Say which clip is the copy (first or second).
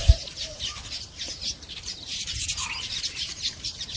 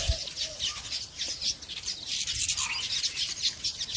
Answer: first